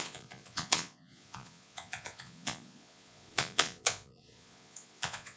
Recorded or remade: remade